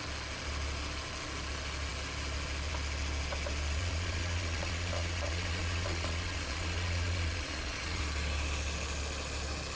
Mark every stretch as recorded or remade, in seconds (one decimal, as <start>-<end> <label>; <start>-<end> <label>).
0.0-3.8 recorded; 3.8-8.0 remade; 8.0-9.8 recorded